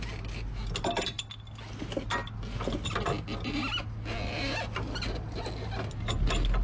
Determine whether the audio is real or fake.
real